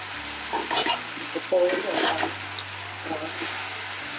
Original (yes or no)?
yes